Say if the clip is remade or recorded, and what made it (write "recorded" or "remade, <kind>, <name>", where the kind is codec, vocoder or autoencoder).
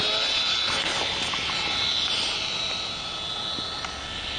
recorded